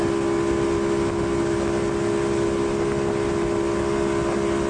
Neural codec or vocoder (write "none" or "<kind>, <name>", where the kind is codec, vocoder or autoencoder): none